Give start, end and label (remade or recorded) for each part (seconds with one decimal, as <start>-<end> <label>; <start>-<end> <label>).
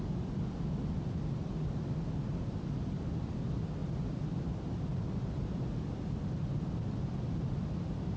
0.0-8.2 recorded